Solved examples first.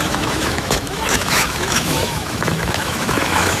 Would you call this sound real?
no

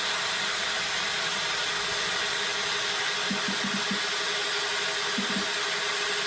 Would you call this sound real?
yes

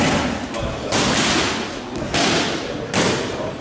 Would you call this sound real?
no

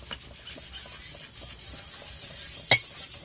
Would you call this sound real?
yes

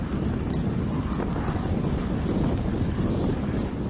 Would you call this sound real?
yes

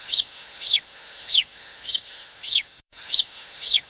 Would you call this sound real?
no